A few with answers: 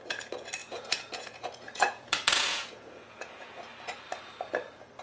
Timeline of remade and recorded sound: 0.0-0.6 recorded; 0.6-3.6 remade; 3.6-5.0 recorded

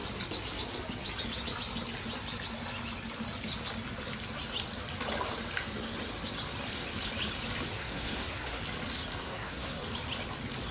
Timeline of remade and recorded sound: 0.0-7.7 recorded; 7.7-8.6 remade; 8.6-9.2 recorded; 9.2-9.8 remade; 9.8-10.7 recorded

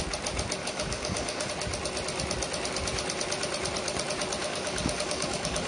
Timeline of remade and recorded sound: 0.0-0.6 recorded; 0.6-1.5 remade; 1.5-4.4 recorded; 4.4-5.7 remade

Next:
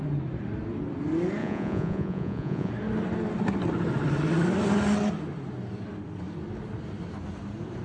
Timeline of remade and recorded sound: 0.0-1.4 recorded; 1.4-2.7 remade; 2.7-7.8 recorded

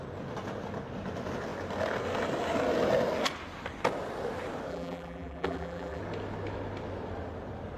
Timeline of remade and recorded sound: 0.0-4.7 recorded; 4.7-6.0 remade; 6.0-7.8 recorded

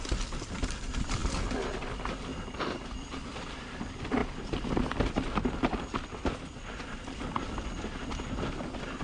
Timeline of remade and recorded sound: 0.0-2.3 recorded; 2.3-3.3 remade; 3.3-9.0 recorded

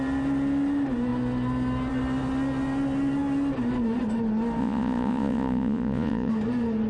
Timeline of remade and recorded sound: 0.0-4.6 recorded; 4.6-6.3 remade; 6.3-6.9 recorded